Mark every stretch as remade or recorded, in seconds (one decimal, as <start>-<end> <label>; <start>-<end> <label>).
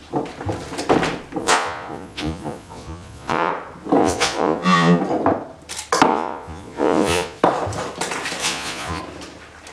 0.0-1.4 recorded; 1.4-3.5 remade; 3.5-4.0 recorded; 4.0-5.0 remade; 5.0-6.1 recorded; 6.1-7.4 remade; 7.4-8.4 recorded; 8.4-9.0 remade; 9.0-9.7 recorded